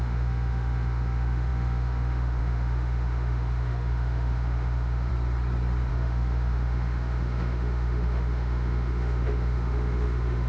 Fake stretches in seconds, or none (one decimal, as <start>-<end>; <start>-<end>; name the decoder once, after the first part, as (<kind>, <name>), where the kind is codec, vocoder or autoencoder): 0.0-5.1 (autoencoder, DAC-VAE); 5.9-10.5